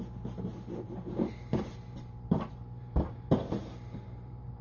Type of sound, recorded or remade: remade